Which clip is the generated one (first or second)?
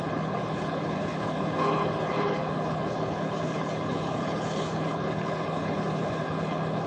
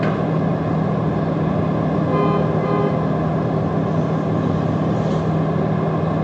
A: first